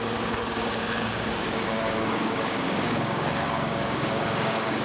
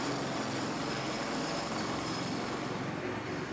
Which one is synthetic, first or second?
first